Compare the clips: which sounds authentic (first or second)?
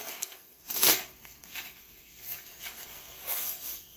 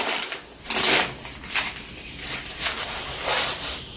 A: second